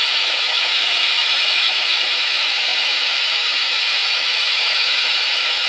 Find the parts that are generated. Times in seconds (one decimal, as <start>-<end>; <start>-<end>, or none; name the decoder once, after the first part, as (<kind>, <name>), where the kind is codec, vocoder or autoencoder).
0.0-5.7 (autoencoder, DAC-VAE)